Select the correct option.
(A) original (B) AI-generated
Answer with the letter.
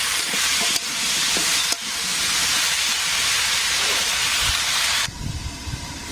B